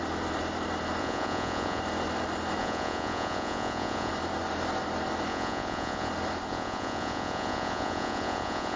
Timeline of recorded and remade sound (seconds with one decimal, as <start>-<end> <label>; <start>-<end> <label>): 0.0-1.0 recorded; 1.0-1.8 remade; 1.8-2.6 recorded; 2.6-4.1 remade; 4.1-5.3 recorded; 5.3-6.1 remade; 6.1-6.5 recorded; 6.5-8.8 remade